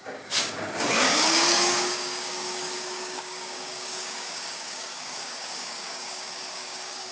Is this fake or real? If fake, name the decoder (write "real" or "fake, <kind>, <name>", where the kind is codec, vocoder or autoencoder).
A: fake, codec, DAC